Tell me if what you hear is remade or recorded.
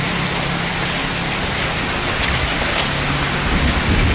recorded